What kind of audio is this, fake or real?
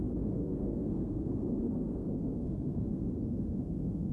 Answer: fake